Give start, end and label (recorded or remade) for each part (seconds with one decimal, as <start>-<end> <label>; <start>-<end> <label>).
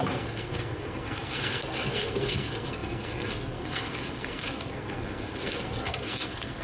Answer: 0.0-6.6 remade